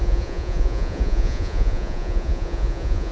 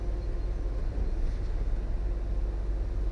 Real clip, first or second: second